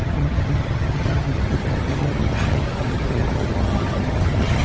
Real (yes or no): no